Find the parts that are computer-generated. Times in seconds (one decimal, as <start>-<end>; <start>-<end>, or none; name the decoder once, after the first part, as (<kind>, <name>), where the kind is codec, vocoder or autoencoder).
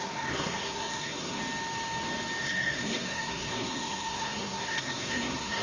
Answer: 0.0-1.4 (codec, SNAC); 2.4-5.6